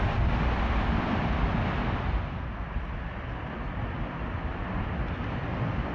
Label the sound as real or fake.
real